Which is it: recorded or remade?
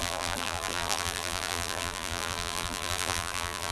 remade